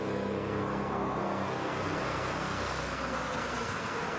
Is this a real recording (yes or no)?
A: no